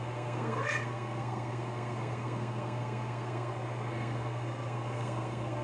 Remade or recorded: remade